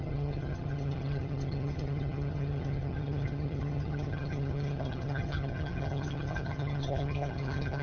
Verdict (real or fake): fake